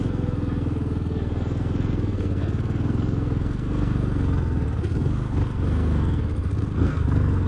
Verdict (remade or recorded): remade